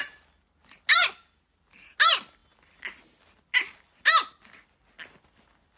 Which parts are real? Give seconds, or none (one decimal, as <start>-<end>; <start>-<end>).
0.0-5.8